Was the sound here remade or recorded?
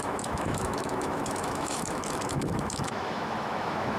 remade